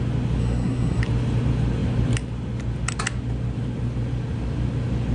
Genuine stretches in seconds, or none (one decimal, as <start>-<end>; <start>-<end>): 0.0-0.4; 1.0-5.1

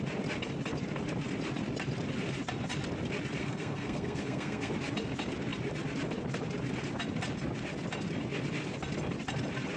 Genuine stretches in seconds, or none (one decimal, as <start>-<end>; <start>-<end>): 0.0-3.4; 4.7-9.8

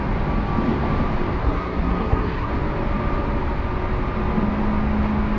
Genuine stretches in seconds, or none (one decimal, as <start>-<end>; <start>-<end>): 0.0-1.4; 2.5-5.4